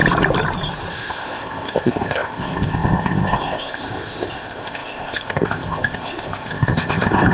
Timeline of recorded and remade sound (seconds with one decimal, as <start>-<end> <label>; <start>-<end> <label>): 0.0-0.9 recorded; 0.9-7.3 remade